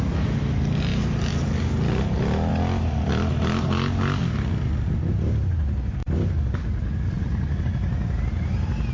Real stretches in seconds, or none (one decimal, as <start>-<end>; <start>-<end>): 0.0-8.9